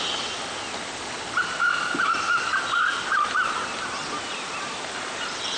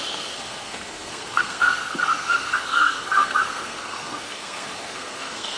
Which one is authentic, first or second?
first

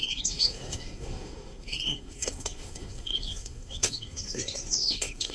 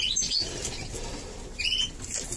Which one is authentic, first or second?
second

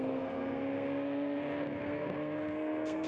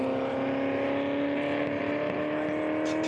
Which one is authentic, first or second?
second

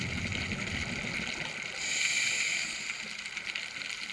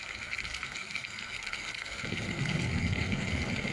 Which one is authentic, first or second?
first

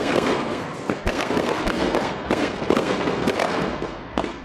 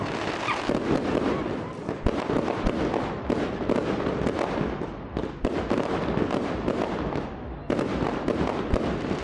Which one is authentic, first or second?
second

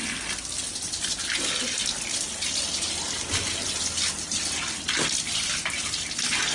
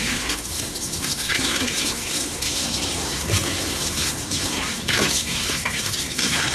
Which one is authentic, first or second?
first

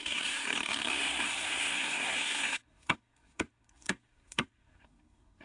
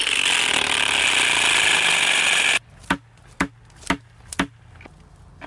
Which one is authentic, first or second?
second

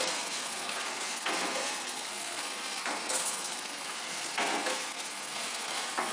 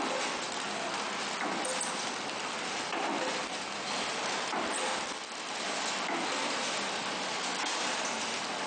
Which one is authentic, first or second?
second